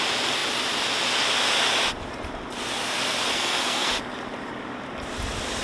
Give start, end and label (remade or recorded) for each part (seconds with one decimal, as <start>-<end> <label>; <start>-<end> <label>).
0.0-3.3 recorded; 3.3-3.9 remade; 3.9-5.6 recorded